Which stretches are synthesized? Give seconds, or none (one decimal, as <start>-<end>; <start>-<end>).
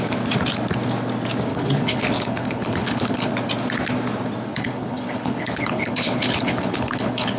1.5-3.3; 4.5-7.4